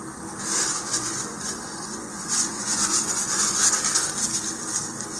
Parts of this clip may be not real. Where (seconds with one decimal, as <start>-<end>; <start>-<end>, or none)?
0.7-3.8

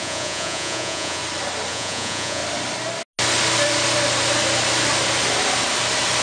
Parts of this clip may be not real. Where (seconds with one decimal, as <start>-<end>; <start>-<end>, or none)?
0.0-1.2; 1.7-2.4

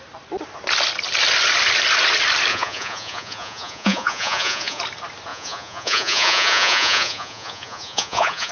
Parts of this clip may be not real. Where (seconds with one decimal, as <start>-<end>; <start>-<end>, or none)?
2.5-4.8; 5.3-8.5

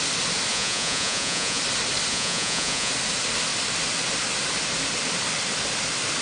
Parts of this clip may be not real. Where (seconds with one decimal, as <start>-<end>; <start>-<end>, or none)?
0.5-1.6; 2.1-2.9